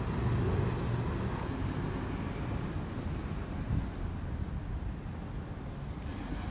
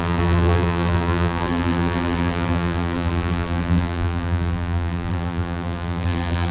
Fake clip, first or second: second